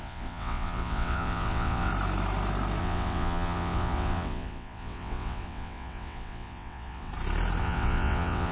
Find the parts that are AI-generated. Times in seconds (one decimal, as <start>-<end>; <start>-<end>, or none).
0.0-1.9; 2.8-7.1; 7.6-8.5

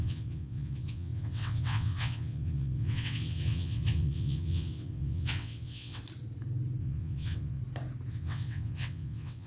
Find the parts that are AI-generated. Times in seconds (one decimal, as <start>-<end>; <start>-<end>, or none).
0.0-6.0; 6.8-7.6; 8.1-9.5

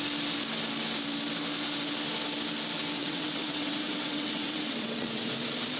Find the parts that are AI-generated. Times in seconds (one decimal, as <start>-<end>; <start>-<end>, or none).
3.0-5.3

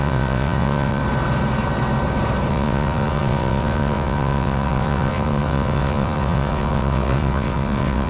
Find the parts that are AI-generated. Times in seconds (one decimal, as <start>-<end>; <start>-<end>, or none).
0.0-1.0; 2.5-8.1